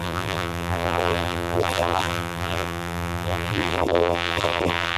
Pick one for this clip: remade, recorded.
remade